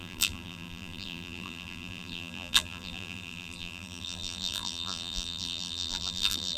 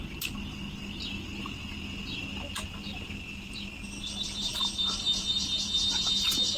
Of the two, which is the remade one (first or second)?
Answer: first